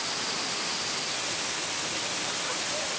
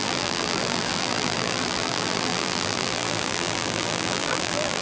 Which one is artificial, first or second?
second